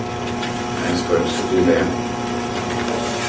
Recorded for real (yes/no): yes